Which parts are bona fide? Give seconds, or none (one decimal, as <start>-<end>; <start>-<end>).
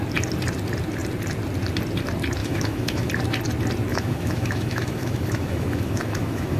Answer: 0.0-2.4; 3.1-3.9